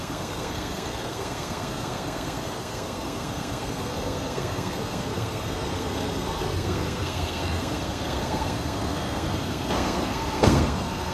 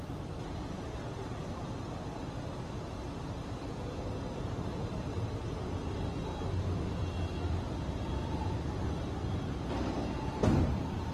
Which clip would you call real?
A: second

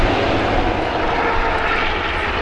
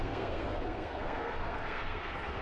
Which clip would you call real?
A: first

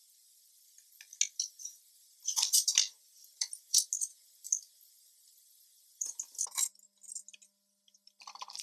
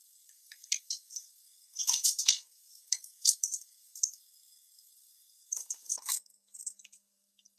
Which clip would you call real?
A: first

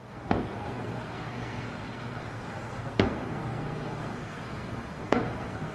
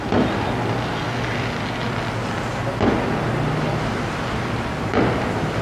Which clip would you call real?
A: second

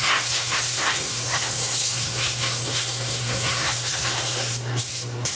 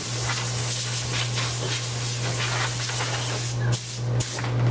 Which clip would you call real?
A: second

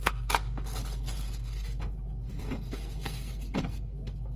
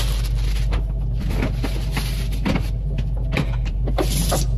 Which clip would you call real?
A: second